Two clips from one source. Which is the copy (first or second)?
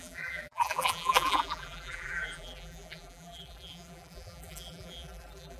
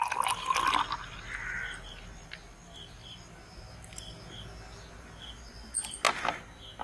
first